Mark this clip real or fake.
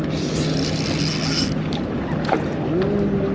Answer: real